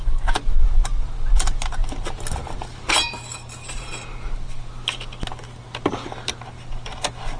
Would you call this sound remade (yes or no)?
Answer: no